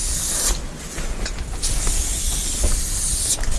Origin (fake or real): real